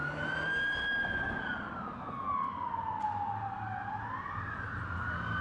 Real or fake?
real